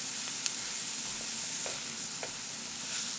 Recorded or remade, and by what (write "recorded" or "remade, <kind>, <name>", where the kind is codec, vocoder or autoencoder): recorded